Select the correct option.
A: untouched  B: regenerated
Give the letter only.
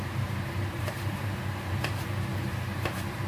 B